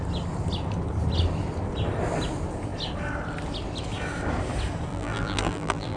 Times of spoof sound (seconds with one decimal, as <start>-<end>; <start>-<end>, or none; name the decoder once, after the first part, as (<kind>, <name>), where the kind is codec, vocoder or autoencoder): 4.9-6.0 (vocoder, BigVGAN v2)